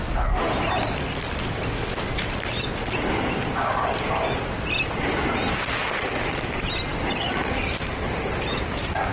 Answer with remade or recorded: recorded